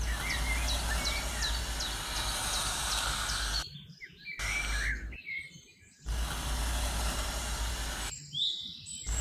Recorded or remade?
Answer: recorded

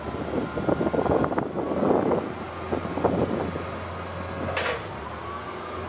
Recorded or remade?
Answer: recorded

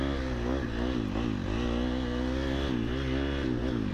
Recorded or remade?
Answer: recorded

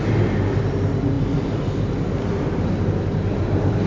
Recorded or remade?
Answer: recorded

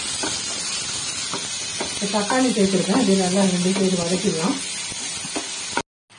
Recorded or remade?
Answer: recorded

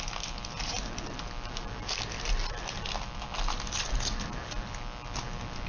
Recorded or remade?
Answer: recorded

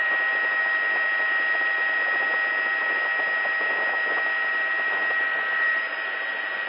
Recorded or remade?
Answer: recorded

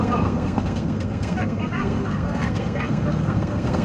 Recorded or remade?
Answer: remade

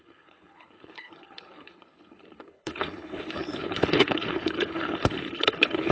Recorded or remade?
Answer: remade